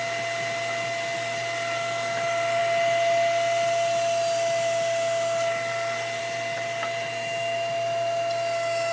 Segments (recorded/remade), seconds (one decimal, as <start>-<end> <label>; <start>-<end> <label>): 0.0-8.9 recorded

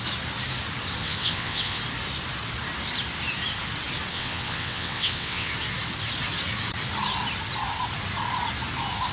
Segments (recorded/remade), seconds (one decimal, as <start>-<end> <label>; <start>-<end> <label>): 0.0-1.0 recorded; 1.0-1.8 remade; 1.8-4.1 recorded; 4.1-5.5 remade; 5.5-9.1 recorded

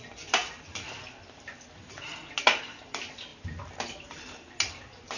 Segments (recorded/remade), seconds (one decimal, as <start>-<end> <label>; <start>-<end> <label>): 0.0-5.2 recorded

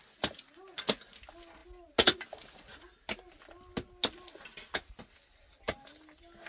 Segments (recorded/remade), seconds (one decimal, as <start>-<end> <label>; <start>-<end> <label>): 0.0-6.5 recorded